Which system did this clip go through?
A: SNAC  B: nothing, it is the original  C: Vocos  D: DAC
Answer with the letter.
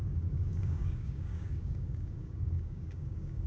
D